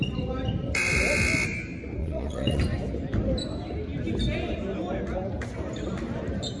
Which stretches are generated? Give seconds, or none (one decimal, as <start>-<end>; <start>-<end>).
2.0-2.6